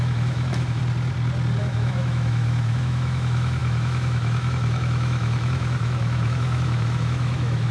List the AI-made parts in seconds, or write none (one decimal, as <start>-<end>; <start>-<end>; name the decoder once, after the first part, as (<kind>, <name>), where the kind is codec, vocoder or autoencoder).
0.0-0.8 (autoencoder, DAC-VAE); 1.6-7.7